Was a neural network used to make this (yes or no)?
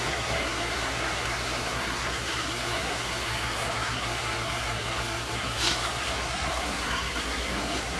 yes